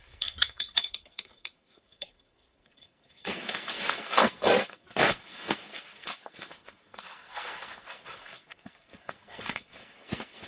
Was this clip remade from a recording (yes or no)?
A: yes